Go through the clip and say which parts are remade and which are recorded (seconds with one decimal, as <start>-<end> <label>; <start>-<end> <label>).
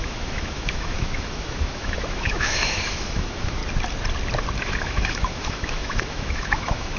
0.0-3.6 remade; 3.6-4.6 recorded; 4.6-7.0 remade